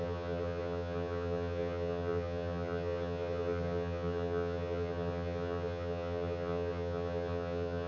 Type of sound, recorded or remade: remade